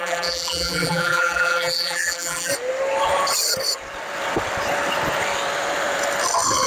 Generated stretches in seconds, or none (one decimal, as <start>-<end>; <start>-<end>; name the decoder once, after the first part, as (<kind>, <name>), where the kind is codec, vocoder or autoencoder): 0.0-2.5 (vocoder, BigVGAN v2)